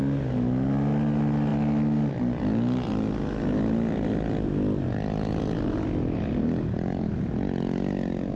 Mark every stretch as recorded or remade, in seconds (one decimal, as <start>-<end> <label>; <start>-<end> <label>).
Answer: 0.0-8.4 recorded